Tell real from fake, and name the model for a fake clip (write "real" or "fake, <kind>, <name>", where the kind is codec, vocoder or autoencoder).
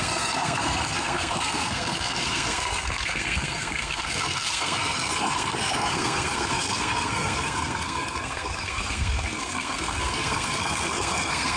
fake, codec, SNAC